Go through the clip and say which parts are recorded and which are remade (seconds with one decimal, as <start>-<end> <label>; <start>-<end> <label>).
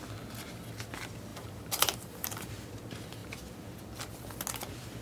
0.0-1.3 recorded; 1.3-2.5 remade; 2.5-5.0 recorded